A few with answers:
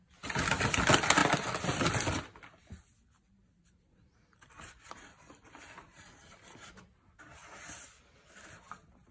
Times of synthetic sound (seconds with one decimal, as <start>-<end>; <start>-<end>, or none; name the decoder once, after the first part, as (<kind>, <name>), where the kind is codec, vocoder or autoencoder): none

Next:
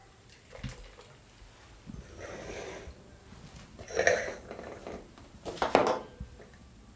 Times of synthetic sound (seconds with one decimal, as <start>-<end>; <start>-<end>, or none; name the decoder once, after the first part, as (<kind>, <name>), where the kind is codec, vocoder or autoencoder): 4.2-5.8 (vocoder, BigVGAN v2)

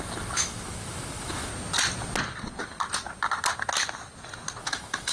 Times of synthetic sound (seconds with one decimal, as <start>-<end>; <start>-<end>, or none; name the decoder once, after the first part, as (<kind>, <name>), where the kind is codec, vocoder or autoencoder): 0.0-1.5 (autoencoder, DAC-VAE); 4.6-5.1